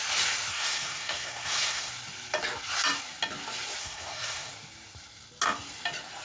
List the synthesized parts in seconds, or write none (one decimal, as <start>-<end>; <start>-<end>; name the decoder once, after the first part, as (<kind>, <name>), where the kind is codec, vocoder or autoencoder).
0.5-1.9 (codec, SNAC); 3.8-4.5